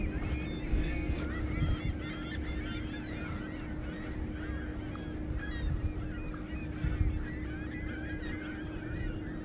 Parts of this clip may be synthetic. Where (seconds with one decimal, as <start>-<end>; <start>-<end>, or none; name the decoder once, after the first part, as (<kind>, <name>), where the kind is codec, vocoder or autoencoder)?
0.7-1.2 (codec, SNAC)